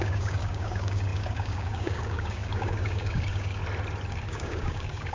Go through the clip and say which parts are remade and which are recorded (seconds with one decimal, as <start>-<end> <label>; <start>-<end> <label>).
0.0-3.6 remade; 3.6-4.1 recorded; 4.1-5.1 remade